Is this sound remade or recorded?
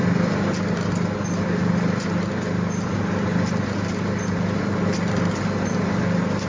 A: recorded